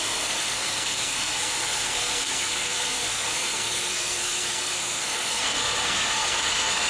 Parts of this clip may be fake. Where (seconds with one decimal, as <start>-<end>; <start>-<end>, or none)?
0.0-6.9